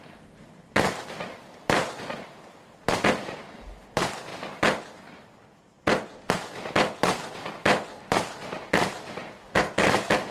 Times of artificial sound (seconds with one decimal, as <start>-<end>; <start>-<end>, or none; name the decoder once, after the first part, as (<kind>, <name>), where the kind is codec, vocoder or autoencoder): 0.0-4.3 (vocoder, BigVGAN v2); 6.3-10.3